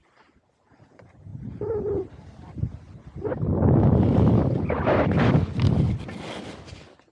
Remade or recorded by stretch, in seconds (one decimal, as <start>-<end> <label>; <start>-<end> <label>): 0.0-7.1 recorded